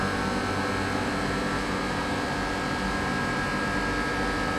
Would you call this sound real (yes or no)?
yes